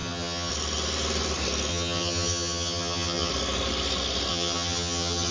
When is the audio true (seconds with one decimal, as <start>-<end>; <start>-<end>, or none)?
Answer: 0.5-1.7; 3.3-4.3